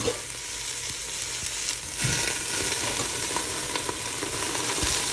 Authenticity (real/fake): real